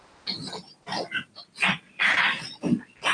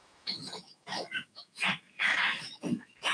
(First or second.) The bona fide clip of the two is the first